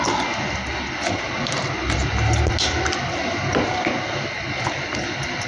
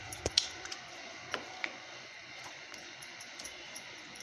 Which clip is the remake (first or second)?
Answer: second